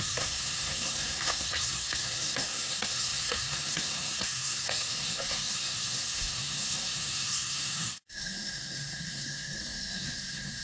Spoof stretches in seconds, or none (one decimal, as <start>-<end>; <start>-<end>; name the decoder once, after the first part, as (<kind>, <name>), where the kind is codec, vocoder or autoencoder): 0.0-10.6 (codec, SNAC)

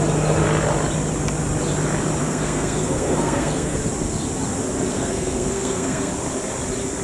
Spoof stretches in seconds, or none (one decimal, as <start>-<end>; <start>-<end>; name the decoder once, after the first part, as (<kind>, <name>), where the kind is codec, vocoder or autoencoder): 2.2-3.8 (codec, SNAC); 4.9-6.1

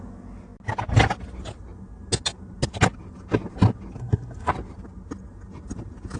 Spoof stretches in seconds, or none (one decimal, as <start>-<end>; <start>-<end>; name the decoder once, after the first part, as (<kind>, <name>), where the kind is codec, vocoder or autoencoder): 4.0-4.5 (codec, SNAC)

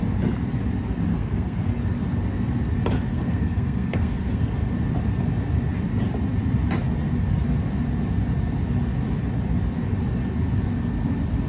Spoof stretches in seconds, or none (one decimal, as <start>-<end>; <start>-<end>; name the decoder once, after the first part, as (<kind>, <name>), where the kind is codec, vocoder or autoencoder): 1.1-1.7 (codec, SNAC); 3.1-4.5